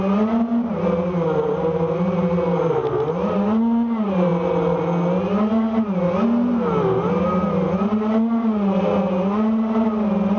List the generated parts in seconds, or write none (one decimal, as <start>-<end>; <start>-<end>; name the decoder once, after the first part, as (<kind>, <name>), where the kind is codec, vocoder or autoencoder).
none